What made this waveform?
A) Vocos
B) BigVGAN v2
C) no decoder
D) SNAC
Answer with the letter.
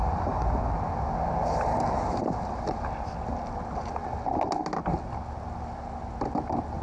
C